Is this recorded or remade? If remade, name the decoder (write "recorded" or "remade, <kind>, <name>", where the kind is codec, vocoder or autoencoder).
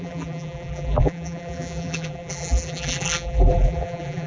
remade, vocoder, BigVGAN v2